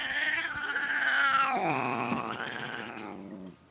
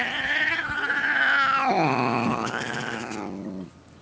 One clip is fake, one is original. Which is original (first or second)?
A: second